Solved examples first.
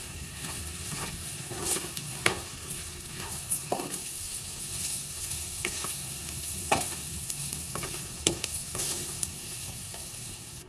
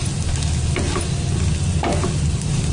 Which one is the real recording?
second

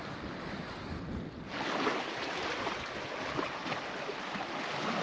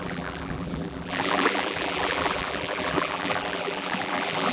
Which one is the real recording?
first